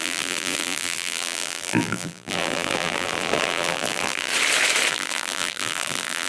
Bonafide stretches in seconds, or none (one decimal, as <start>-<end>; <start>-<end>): 4.3-4.9